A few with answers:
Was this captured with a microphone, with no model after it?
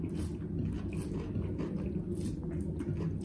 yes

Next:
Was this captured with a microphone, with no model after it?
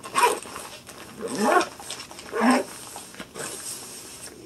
yes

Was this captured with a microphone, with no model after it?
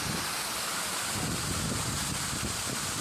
yes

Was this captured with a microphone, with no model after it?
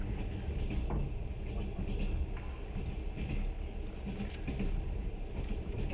yes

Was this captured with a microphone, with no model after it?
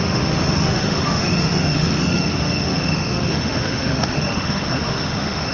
no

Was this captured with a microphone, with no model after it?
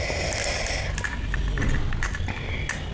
yes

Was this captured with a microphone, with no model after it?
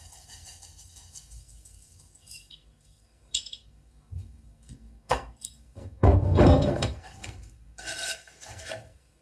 no